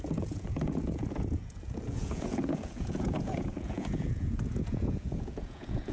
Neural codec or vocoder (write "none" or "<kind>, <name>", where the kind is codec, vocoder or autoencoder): vocoder, Vocos